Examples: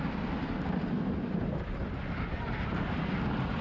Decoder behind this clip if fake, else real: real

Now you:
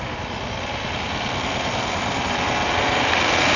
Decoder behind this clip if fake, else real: real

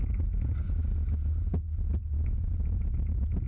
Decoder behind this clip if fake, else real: real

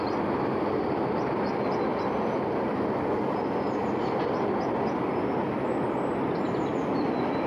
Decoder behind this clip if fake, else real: real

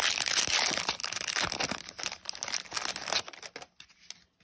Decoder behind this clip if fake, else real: real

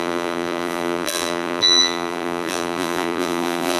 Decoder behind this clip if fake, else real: fake, vocoder, BigVGAN v2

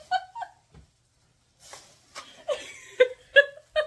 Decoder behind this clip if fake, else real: real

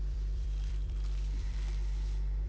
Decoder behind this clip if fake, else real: fake, vocoder, BigVGAN v2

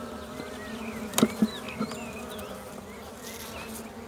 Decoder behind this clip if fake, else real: real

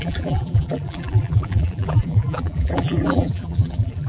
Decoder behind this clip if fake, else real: fake, vocoder, BigVGAN v2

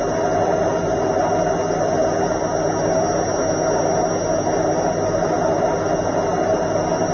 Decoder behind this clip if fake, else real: real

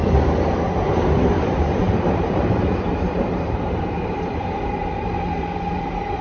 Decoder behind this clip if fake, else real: fake, vocoder, BigVGAN v2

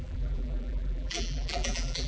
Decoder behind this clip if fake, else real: fake, vocoder, BigVGAN v2